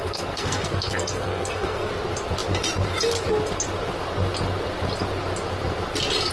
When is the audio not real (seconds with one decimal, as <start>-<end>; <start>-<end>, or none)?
0.0-1.9